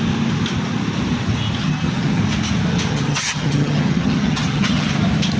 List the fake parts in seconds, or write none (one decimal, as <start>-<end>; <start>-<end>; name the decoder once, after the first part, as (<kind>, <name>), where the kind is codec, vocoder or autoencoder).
1.6-2.2 (vocoder, HiFi-GAN); 2.9-4.9